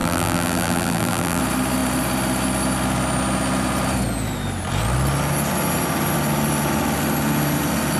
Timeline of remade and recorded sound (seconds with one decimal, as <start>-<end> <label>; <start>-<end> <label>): 0.0-1.4 remade; 1.4-8.0 recorded

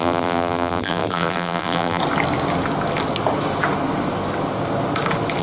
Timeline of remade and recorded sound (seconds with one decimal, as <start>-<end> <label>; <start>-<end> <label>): 0.0-2.0 remade; 2.0-5.4 recorded

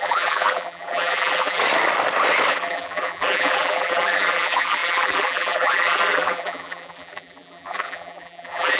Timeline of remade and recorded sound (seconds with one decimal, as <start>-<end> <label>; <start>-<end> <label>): 0.0-1.6 remade; 1.6-2.5 recorded; 2.5-8.8 remade